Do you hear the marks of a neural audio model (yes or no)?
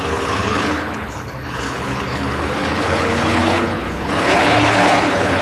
yes